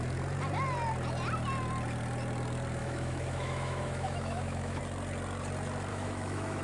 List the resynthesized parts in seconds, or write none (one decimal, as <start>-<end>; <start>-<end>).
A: 2.8-4.8; 5.9-6.6